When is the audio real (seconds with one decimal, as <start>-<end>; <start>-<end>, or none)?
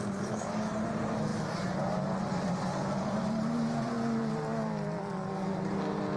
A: 0.0-1.3; 5.0-6.2